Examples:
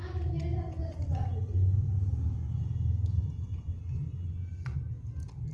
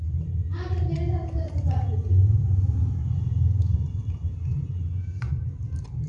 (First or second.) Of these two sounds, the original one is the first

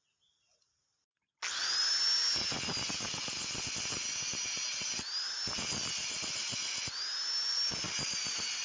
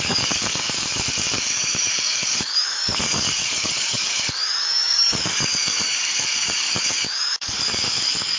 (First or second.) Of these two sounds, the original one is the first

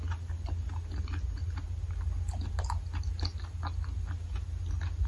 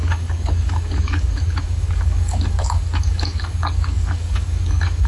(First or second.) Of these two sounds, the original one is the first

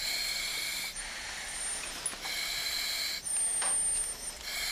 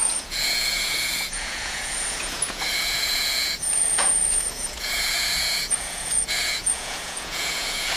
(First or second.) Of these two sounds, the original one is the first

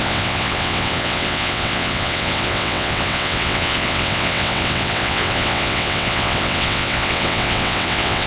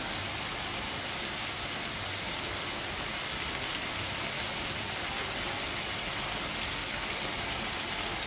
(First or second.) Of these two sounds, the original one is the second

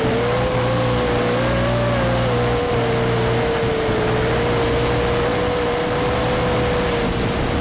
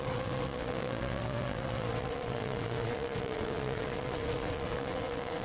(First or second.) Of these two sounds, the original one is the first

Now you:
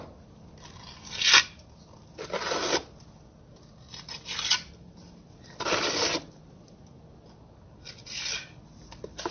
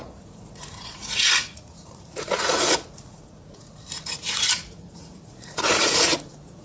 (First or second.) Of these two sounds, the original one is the first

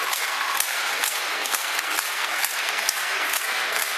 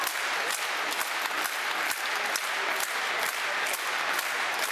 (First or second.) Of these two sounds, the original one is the second